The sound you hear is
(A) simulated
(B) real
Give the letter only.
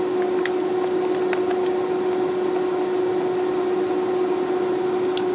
B